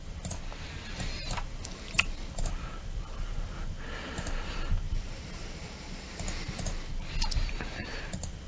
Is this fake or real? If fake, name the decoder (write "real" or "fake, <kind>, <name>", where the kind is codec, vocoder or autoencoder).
real